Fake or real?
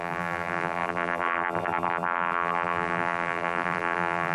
fake